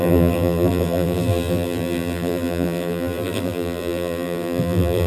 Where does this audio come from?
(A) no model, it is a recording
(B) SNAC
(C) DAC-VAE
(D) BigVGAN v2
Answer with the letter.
D